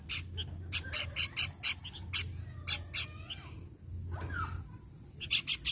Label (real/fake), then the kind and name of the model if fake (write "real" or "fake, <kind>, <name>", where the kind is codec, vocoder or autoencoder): real